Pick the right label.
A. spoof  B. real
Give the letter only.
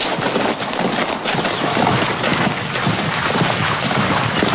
B